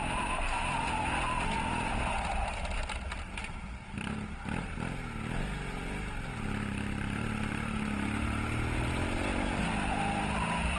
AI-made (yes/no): no